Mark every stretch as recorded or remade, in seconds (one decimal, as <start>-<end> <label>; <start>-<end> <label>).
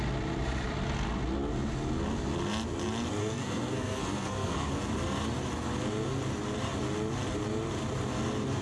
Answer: 0.0-3.2 recorded; 3.2-4.7 remade; 4.7-8.6 recorded